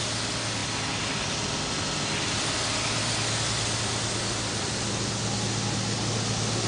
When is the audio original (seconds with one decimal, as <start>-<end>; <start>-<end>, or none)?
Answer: 0.0-6.7

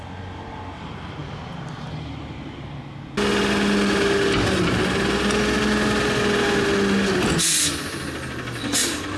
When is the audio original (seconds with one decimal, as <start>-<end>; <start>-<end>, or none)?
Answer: 0.0-9.2

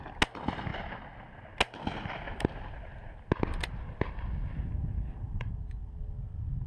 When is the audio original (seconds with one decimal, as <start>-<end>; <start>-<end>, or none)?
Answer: 0.0-4.8; 5.5-6.7

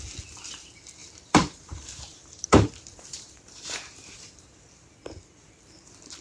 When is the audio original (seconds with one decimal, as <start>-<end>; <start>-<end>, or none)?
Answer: 0.0-1.0; 4.7-6.2

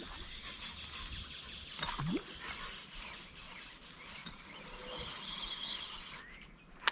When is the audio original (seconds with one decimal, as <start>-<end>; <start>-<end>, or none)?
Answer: 0.0-6.9

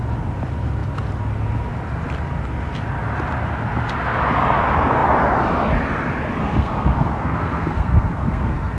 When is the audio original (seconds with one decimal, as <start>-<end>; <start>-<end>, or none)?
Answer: 0.0-6.4

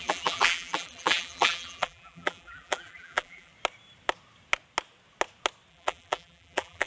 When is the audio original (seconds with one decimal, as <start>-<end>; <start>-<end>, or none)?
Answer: 3.5-5.7